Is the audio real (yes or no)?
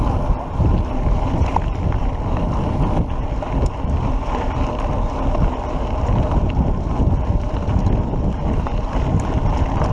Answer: yes